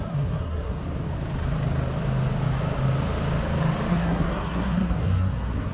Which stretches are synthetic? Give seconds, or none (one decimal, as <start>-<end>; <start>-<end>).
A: 0.0-0.8; 3.9-5.7